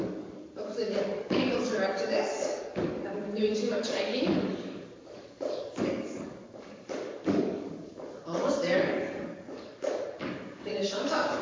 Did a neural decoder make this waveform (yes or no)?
yes